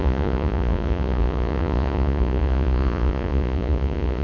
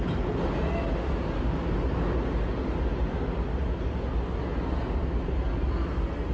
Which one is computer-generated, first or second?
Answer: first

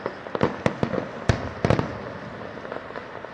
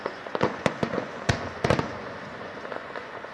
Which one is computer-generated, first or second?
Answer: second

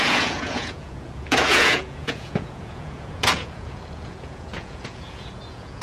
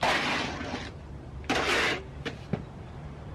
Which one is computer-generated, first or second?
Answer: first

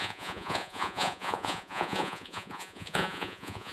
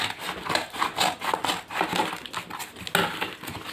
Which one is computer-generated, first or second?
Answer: first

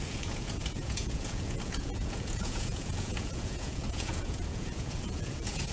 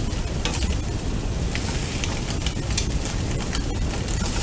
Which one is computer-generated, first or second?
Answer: first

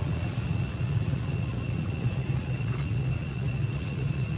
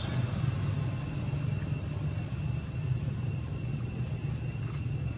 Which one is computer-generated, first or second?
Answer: first